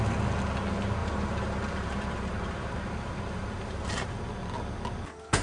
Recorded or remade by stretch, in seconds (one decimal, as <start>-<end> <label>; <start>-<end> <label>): 0.0-1.0 recorded; 1.0-4.2 remade; 4.2-5.4 recorded